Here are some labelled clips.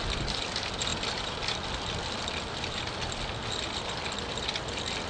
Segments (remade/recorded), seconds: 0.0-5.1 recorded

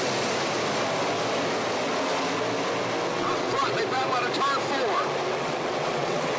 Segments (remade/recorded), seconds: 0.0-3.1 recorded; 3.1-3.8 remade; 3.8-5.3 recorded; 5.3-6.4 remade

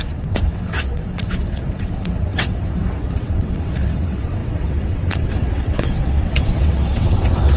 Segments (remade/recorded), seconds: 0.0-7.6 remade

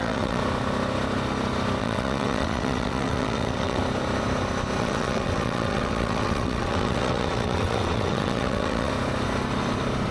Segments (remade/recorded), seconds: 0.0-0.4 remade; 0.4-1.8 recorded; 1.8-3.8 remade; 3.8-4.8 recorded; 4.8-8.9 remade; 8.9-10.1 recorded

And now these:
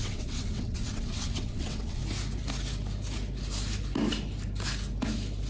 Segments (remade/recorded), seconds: 0.0-2.0 remade; 2.0-5.5 recorded

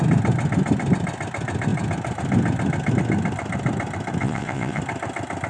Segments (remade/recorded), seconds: 0.0-4.2 recorded; 4.2-4.8 remade; 4.8-5.5 recorded

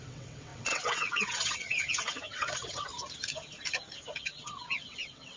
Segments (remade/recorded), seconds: 0.0-2.9 remade; 2.9-4.2 recorded; 4.2-5.4 remade

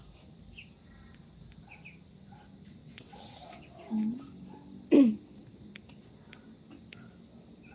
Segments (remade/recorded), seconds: 0.0-2.8 recorded; 2.8-3.6 remade; 3.6-7.7 recorded